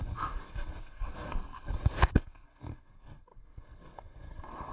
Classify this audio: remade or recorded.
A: remade